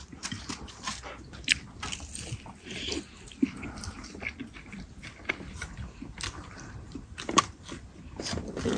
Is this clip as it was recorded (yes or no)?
yes